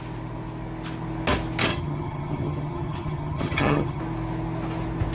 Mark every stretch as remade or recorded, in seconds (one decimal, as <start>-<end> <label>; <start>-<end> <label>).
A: 0.0-1.7 recorded; 1.7-4.0 remade; 4.0-5.1 recorded